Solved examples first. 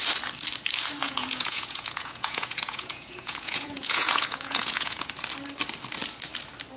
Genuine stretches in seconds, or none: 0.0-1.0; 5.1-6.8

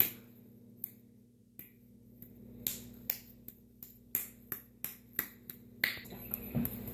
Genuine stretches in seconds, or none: 0.0-6.9